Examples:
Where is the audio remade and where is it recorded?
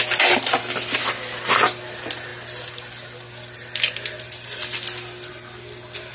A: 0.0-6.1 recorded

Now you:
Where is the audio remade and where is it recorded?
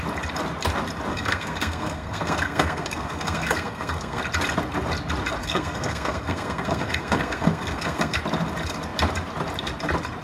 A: 0.0-1.1 recorded; 1.1-4.2 remade; 4.2-5.4 recorded; 5.4-8.2 remade; 8.2-10.2 recorded